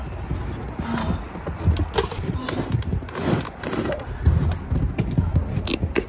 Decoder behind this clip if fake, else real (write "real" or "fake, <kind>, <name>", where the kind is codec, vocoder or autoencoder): real